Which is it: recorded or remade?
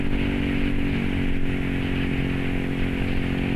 recorded